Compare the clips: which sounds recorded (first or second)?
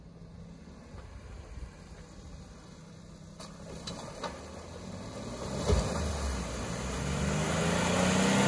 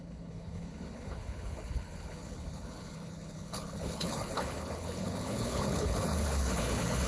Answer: first